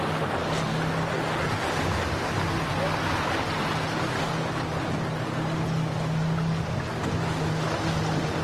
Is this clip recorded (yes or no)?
yes